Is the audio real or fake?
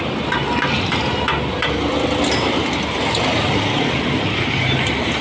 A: real